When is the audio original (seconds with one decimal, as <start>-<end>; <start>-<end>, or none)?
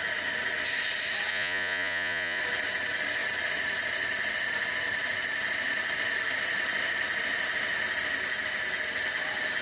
0.0-1.3; 2.4-9.6